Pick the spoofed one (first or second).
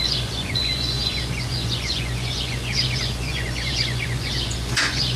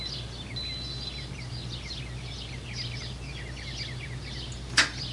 first